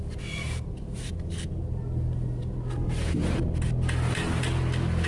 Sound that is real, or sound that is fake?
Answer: real